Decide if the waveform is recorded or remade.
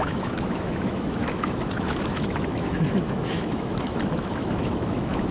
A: remade